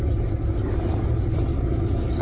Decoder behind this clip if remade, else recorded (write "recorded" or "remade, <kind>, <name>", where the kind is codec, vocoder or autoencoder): recorded